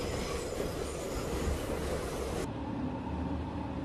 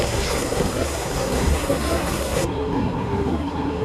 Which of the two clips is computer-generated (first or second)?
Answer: second